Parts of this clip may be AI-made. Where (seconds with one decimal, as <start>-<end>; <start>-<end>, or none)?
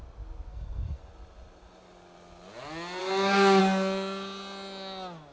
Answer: 0.5-1.0; 3.0-3.6